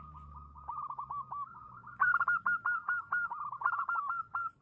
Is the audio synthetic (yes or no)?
no